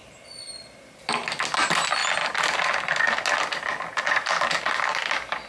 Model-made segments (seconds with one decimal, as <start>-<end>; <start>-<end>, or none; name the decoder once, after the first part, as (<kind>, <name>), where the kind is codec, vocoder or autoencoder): none